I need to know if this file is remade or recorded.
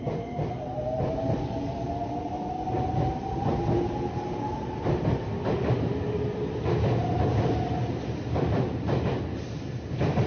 recorded